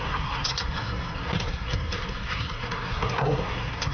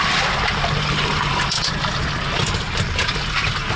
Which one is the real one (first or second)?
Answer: second